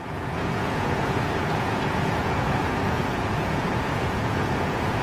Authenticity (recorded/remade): remade